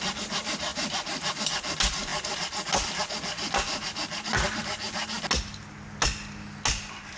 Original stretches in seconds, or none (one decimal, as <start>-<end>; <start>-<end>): 0.0-7.2